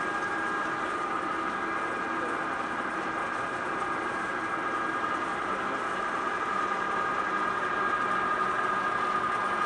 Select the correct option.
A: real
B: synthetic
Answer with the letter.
A